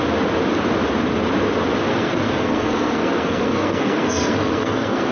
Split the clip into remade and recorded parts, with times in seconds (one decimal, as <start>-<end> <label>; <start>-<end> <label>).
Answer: 0.0-1.9 recorded; 1.9-5.1 remade